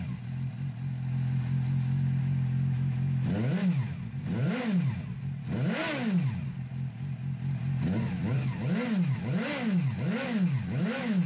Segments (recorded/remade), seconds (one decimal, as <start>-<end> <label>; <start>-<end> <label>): 0.0-11.3 recorded